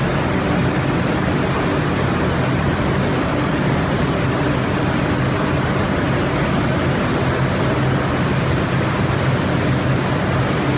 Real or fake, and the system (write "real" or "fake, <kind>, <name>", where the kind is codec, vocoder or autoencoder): real